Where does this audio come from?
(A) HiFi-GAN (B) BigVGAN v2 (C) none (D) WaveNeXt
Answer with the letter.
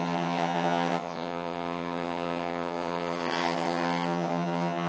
A